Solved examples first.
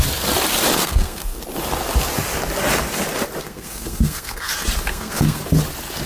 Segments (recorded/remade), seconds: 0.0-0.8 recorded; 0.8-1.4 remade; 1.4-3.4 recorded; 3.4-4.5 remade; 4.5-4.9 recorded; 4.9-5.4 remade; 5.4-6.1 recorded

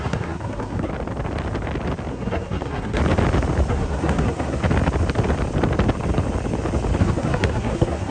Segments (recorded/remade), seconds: 0.0-0.9 remade; 0.9-2.1 recorded; 2.1-3.0 remade; 3.0-3.7 recorded; 3.7-4.6 remade; 4.6-7.0 recorded; 7.0-8.1 remade

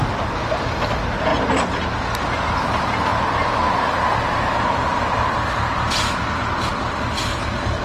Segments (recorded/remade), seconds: 0.0-7.8 recorded

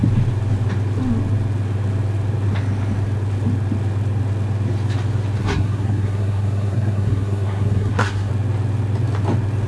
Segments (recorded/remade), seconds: 0.0-5.4 recorded; 5.4-8.3 remade; 8.3-9.7 recorded

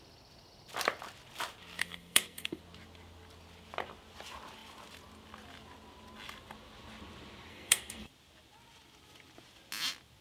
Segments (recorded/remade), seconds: 0.0-1.8 recorded; 1.8-2.6 remade; 2.6-7.5 recorded; 7.5-8.1 remade; 8.1-10.2 recorded